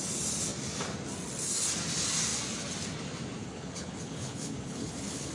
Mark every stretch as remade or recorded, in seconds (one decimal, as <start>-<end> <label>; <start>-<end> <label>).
0.0-3.4 recorded; 3.4-5.3 remade